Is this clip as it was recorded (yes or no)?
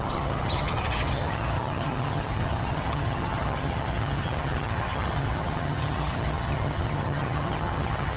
no